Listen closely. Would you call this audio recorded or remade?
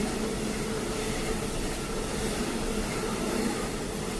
recorded